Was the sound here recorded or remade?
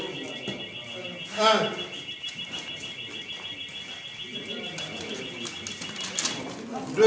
recorded